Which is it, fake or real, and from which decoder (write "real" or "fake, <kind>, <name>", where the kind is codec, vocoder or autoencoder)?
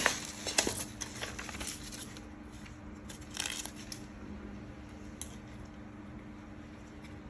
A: real